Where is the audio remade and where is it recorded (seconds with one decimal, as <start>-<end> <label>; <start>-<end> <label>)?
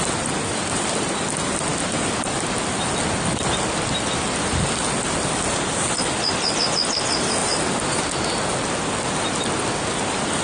0.0-10.4 recorded